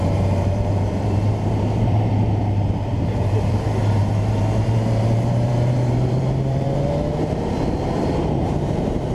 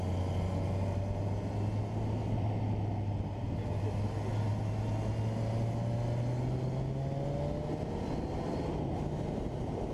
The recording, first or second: second